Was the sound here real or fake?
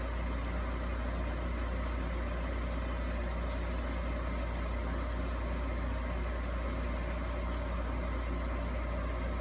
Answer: real